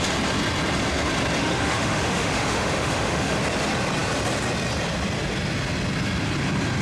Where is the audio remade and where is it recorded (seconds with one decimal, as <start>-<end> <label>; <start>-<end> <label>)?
0.0-1.4 recorded; 1.4-3.4 remade; 3.4-6.8 recorded